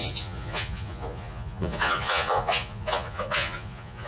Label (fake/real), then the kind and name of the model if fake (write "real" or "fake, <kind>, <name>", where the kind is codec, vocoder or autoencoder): fake, vocoder, Vocos